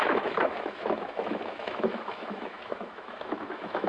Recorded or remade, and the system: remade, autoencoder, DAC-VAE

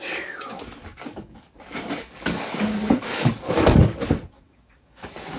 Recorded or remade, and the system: remade, codec, DAC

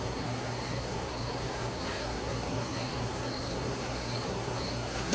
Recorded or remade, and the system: remade, codec, SNAC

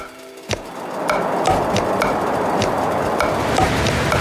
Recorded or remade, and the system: recorded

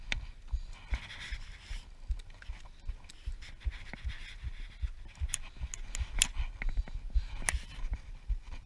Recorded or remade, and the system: recorded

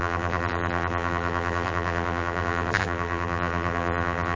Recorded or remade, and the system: remade, vocoder, BigVGAN v2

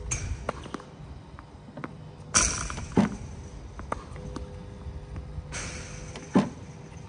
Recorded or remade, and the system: recorded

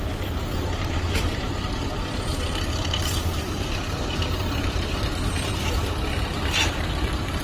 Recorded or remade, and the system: remade, vocoder, BigVGAN v2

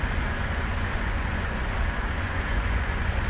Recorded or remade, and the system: remade, vocoder, Vocos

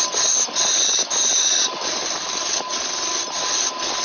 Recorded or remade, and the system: recorded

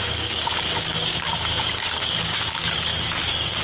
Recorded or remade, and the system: remade, codec, DAC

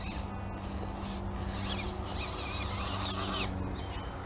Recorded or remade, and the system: recorded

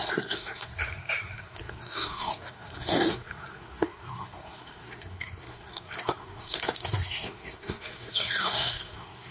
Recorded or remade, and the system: remade, codec, SNAC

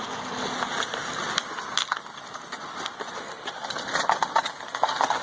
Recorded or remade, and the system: recorded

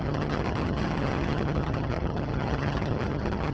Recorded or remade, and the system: remade, vocoder, HiFi-GAN